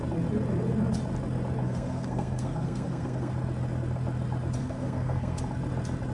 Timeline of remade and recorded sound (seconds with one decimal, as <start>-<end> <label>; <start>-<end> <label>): 0.0-1.6 recorded; 1.6-3.3 remade; 3.3-4.6 recorded; 4.6-5.4 remade; 5.4-6.1 recorded

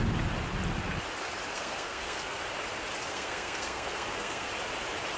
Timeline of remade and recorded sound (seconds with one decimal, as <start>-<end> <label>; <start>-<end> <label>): 0.0-1.5 recorded; 1.5-2.4 remade; 2.4-3.1 recorded; 3.1-4.5 remade; 4.5-5.2 recorded

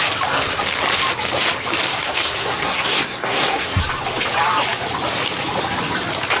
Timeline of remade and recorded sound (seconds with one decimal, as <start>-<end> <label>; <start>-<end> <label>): 0.0-2.0 recorded; 2.0-3.8 remade; 3.8-6.4 recorded

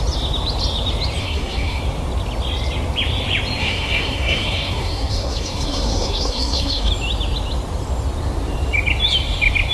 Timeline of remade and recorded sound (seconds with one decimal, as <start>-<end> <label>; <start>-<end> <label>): 0.0-1.2 recorded; 1.2-1.8 remade; 1.8-3.6 recorded; 3.6-6.9 remade; 6.9-9.7 recorded

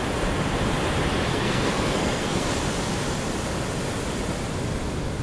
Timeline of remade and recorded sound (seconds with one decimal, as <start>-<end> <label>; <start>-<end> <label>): 0.0-1.3 recorded; 1.3-2.5 remade; 2.5-5.2 recorded

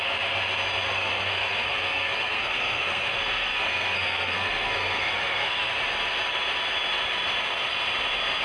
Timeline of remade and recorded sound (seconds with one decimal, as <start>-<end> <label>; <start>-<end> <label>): 0.0-0.9 recorded; 0.9-5.7 remade; 5.7-8.4 recorded

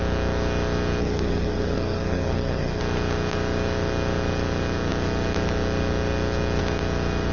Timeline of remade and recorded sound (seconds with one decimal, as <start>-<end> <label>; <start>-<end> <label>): 0.0-1.0 recorded; 1.0-2.8 remade; 2.8-7.3 recorded

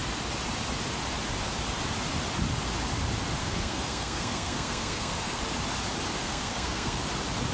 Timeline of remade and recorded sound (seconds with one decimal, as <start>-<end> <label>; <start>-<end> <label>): 0.0-3.4 recorded; 3.4-5.4 remade; 5.4-6.2 recorded; 6.2-7.0 remade; 7.0-7.5 recorded